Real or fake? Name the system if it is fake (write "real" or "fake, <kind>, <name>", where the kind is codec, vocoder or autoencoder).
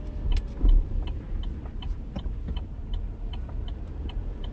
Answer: fake, vocoder, BigVGAN v2